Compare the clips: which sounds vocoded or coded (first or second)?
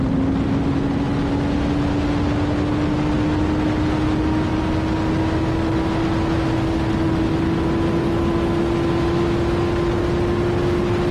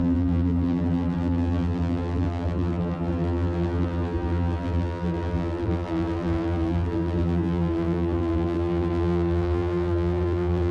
second